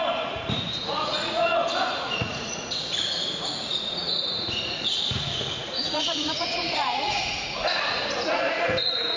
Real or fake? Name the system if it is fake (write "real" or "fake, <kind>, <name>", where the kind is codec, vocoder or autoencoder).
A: fake, vocoder, Vocos